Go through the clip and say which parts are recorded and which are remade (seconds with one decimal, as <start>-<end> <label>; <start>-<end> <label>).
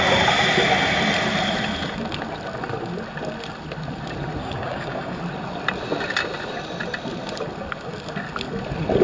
0.0-4.4 recorded; 4.4-5.2 remade; 5.2-9.0 recorded